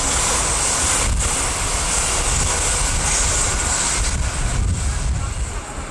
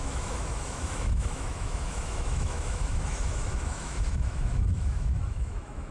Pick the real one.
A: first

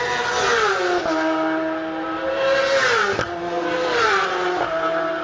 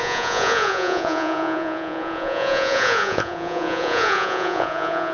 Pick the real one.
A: first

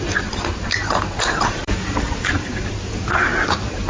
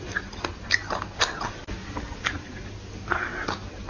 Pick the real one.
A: second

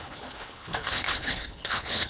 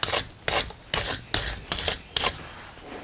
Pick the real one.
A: second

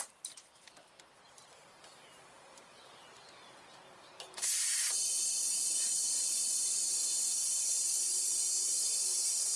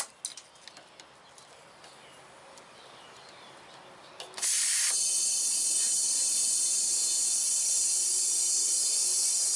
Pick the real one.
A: second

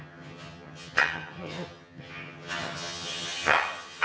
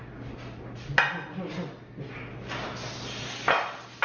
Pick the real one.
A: second